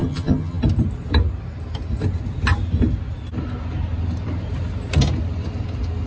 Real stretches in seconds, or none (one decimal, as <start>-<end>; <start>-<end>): 0.6-6.1